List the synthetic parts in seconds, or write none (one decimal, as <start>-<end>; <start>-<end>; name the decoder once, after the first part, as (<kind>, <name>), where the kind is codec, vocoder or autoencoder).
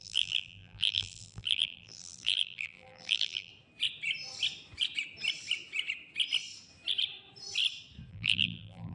0.0-3.5 (vocoder, BigVGAN v2); 8.1-8.9